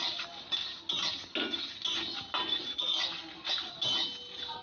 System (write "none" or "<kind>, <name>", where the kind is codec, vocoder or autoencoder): none